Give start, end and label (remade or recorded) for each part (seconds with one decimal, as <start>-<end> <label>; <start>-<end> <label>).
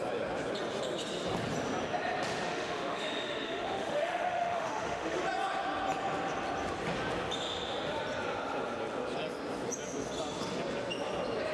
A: 0.0-2.5 recorded; 2.5-5.2 remade; 5.2-11.5 recorded